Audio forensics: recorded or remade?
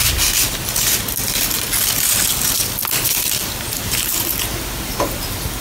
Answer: recorded